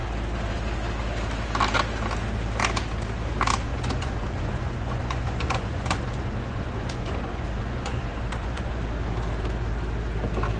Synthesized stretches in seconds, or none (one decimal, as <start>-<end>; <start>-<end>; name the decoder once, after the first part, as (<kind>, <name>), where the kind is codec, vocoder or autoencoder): 3.7-8.8 (vocoder, Vocos)